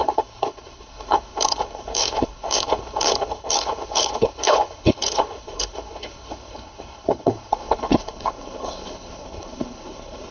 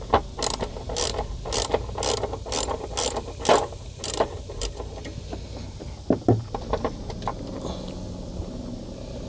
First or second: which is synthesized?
first